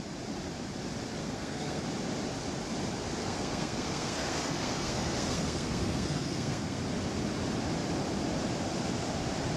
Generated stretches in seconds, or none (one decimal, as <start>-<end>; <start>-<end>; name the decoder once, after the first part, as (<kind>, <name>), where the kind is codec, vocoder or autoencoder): 1.2-1.8 (codec, SNAC); 3.2-6.8